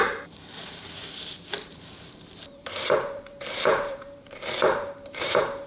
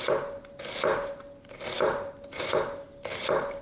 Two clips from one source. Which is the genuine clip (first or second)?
second